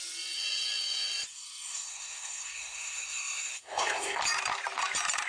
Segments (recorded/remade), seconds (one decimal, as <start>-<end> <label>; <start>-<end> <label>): 0.0-1.3 recorded; 1.3-4.2 remade; 4.2-5.3 recorded